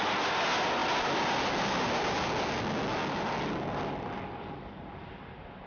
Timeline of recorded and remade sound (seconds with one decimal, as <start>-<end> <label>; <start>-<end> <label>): 0.0-5.7 recorded

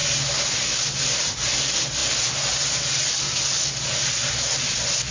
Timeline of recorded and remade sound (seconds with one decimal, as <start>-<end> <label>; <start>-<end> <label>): 0.0-5.1 recorded

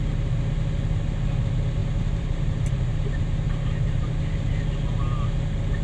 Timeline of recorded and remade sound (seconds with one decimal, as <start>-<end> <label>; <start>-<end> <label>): 0.0-1.8 recorded; 1.8-4.2 remade; 4.2-5.8 recorded

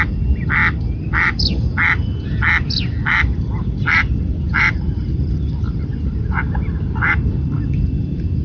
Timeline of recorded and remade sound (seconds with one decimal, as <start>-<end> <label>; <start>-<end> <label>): 0.0-8.4 recorded

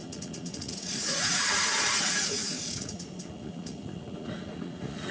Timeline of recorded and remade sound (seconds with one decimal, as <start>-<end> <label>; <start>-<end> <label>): 0.0-5.1 remade

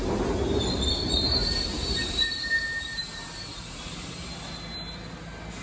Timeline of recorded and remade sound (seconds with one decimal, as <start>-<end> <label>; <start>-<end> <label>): 0.0-1.4 recorded; 1.4-4.3 remade; 4.3-5.6 recorded

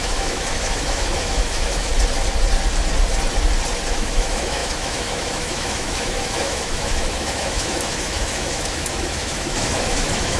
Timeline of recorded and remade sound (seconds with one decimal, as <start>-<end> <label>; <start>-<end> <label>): 0.0-1.9 remade; 1.9-3.9 recorded; 3.9-10.4 remade